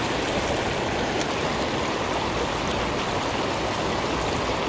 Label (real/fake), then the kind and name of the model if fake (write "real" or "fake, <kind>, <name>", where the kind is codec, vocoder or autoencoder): real